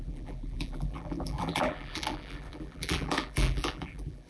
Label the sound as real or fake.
fake